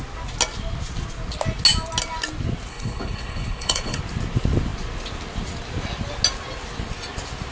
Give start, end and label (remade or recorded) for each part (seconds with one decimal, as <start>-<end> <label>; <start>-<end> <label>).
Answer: 0.0-2.7 recorded; 2.7-4.0 remade; 4.0-7.5 recorded